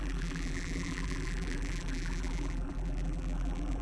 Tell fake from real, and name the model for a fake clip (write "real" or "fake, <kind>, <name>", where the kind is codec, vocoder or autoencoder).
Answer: fake, vocoder, BigVGAN v2